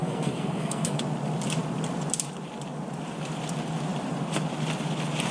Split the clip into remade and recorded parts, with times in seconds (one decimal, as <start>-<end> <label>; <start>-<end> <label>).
0.0-1.0 remade; 1.0-5.3 recorded